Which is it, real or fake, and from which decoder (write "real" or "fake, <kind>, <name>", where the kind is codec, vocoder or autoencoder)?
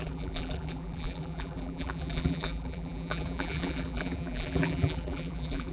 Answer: fake, vocoder, BigVGAN v2